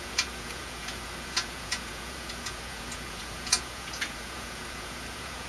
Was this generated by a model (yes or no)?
yes